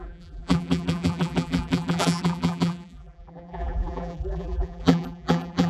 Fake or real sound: fake